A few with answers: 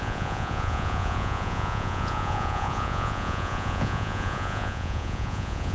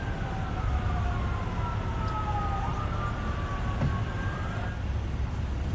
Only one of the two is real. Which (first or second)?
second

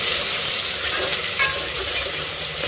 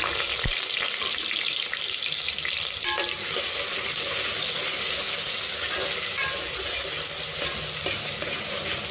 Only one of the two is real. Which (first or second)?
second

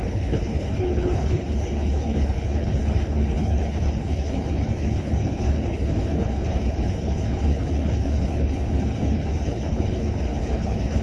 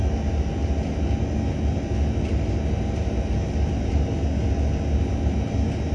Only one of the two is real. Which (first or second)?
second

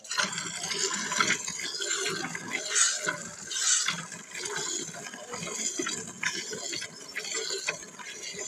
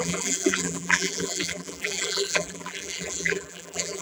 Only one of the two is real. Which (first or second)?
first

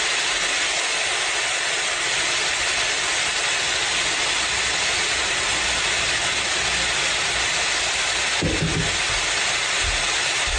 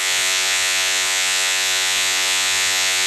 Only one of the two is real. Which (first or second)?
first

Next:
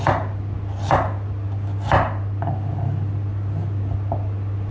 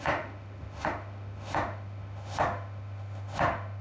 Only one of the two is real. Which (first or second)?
first